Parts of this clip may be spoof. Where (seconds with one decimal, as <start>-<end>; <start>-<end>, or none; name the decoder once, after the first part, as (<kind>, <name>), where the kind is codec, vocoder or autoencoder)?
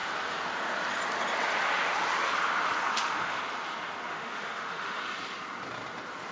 2.9-3.4 (autoencoder, DAC-VAE); 4.1-5.0